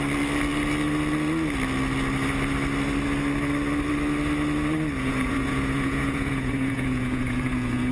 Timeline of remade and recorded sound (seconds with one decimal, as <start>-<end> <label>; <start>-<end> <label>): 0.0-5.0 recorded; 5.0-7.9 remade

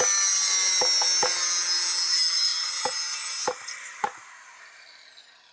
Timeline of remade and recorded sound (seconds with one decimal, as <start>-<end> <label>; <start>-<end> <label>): 0.0-5.5 recorded

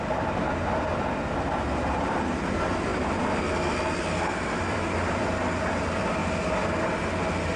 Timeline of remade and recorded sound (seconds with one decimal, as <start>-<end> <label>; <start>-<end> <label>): 0.0-0.9 remade; 0.9-2.3 recorded; 2.3-2.9 remade; 2.9-4.3 recorded; 4.3-6.2 remade; 6.2-7.6 recorded

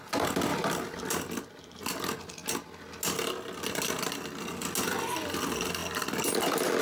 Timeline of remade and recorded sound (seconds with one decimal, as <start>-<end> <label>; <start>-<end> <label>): 0.0-6.8 recorded

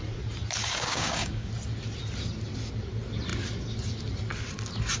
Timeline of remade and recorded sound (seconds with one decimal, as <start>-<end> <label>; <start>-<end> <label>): 0.0-0.6 recorded; 0.6-1.5 remade; 1.5-5.0 recorded

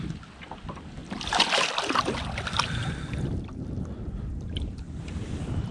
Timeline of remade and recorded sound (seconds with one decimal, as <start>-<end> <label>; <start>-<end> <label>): 0.0-5.7 recorded

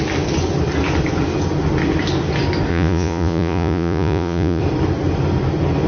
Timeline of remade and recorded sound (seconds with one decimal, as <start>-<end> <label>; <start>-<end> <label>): 0.0-2.7 recorded; 2.7-4.6 remade; 4.6-5.9 recorded